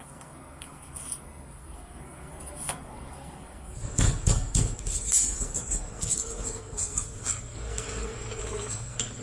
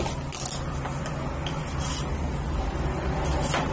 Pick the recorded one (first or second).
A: second